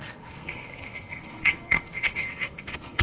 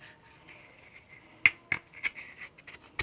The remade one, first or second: first